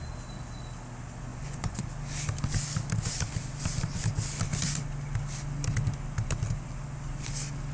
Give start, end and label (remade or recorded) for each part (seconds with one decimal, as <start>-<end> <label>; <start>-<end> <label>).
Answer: 0.0-1.3 recorded; 1.3-1.8 remade; 1.8-7.7 recorded